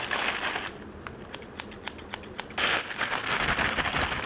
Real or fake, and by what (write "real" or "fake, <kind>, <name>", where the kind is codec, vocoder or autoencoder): real